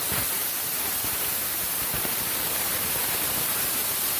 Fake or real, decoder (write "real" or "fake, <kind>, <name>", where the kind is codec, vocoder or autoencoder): fake, vocoder, BigVGAN v2